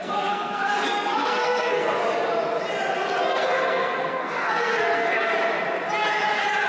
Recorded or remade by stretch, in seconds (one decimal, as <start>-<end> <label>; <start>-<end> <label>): 0.0-2.0 remade; 2.0-3.3 recorded; 3.3-5.3 remade; 5.3-6.7 recorded